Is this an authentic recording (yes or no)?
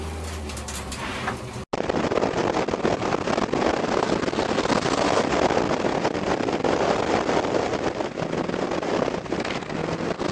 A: yes